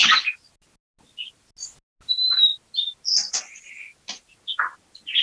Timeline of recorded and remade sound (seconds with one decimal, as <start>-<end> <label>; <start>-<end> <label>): 0.0-5.2 recorded